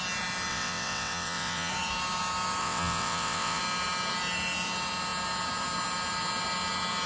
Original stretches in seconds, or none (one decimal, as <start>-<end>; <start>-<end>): 0.0-0.5; 1.7-2.6; 3.6-7.1